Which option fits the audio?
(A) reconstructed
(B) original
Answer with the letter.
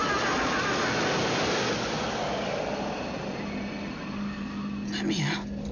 B